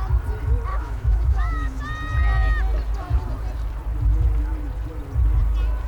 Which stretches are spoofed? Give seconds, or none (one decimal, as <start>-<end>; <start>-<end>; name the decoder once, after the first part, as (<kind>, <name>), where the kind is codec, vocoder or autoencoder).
0.7-1.8 (autoencoder, DAC-VAE)